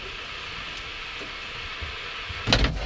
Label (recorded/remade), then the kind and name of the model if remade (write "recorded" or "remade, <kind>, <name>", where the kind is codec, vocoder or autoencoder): recorded